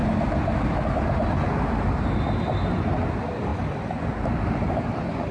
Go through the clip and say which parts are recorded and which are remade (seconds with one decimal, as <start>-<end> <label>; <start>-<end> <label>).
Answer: 0.0-5.3 recorded